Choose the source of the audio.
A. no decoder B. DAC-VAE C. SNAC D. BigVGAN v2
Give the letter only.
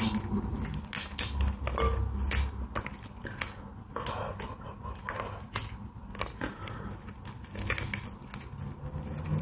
A